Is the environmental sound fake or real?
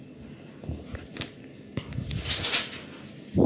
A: real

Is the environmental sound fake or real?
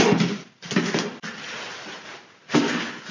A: real